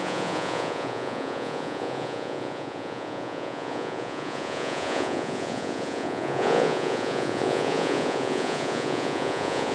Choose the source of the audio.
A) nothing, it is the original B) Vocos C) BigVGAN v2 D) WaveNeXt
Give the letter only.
B